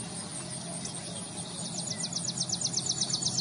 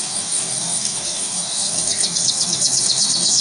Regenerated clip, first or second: second